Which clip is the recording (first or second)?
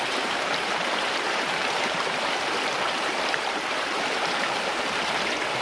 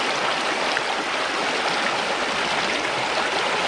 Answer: second